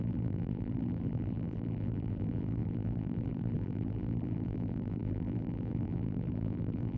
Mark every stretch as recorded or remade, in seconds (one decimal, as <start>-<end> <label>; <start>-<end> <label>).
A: 0.0-7.0 remade